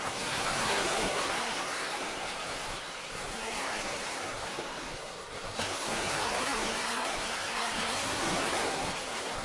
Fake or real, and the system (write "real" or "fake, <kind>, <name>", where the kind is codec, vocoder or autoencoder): fake, codec, SNAC